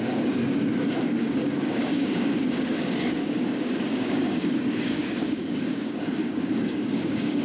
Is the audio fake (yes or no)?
yes